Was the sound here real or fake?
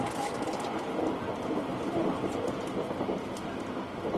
fake